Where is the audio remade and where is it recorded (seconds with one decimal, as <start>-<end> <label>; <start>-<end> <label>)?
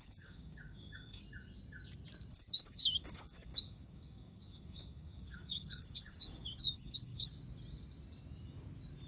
0.0-1.2 remade; 1.2-2.3 recorded; 2.3-7.3 remade; 7.3-9.1 recorded